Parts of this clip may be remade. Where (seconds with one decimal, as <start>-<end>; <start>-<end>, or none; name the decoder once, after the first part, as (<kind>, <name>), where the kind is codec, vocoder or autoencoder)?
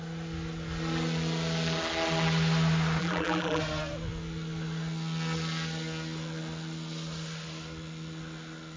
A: 3.0-3.6 (vocoder, BigVGAN v2)